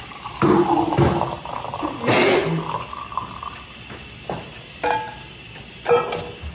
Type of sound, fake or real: real